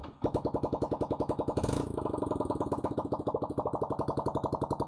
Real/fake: fake